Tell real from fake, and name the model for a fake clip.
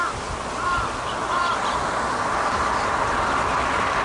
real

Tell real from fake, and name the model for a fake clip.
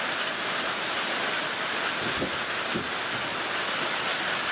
real